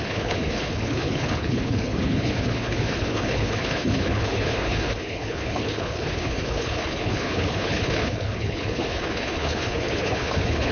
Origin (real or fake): fake